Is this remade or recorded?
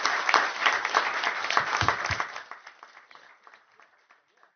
recorded